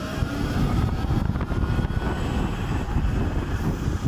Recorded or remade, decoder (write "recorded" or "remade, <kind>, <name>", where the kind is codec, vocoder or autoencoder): recorded